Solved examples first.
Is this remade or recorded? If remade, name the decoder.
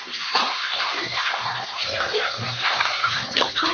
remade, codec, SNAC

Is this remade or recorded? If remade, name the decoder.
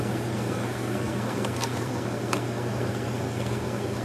remade, codec, SNAC